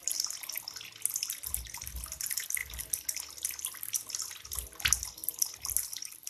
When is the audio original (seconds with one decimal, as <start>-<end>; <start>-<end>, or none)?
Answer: 0.0-6.3